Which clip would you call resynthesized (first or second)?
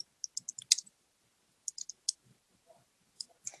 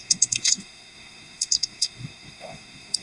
second